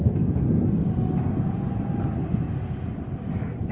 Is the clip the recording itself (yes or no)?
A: yes